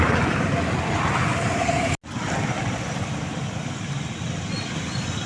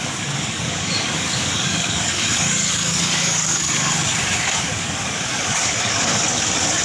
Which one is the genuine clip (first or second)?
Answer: first